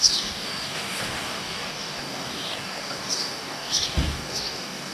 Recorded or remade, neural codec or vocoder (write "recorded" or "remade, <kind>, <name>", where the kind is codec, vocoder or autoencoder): remade, codec, DAC